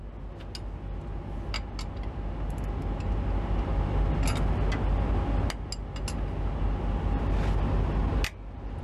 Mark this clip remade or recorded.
recorded